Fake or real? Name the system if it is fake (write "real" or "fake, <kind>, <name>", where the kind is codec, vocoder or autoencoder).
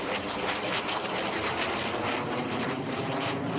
fake, vocoder, BigVGAN v2